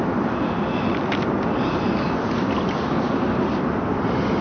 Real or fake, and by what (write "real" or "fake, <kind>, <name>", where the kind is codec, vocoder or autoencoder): real